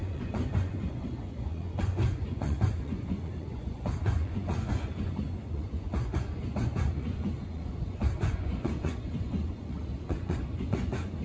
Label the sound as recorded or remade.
remade